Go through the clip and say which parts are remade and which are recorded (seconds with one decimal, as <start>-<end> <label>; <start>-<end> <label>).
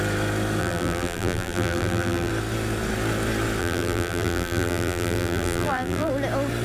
0.0-0.6 recorded; 0.6-2.3 remade; 2.3-3.6 recorded; 3.6-6.1 remade; 6.1-6.6 recorded